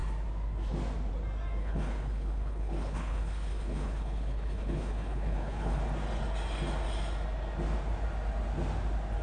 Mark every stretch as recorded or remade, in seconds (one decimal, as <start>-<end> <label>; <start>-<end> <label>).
0.0-1.6 recorded; 1.6-5.8 remade; 5.8-9.2 recorded

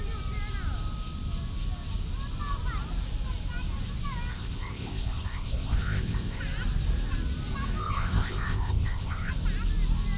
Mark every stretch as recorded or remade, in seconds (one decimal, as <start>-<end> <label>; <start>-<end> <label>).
0.0-4.3 recorded; 4.3-6.4 remade; 6.4-7.8 recorded; 7.8-9.3 remade; 9.3-10.2 recorded

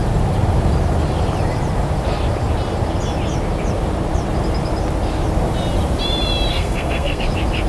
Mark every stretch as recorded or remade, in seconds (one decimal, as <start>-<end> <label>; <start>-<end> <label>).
0.0-6.5 recorded; 6.5-7.2 remade; 7.2-7.7 recorded

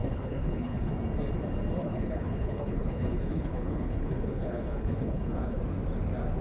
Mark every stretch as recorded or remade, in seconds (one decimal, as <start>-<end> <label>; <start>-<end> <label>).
0.0-0.9 remade; 0.9-1.8 recorded; 1.8-5.6 remade; 5.6-6.4 recorded